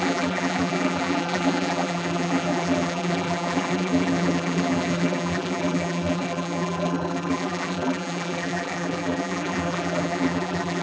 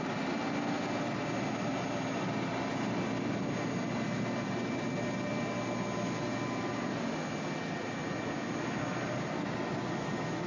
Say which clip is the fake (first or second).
first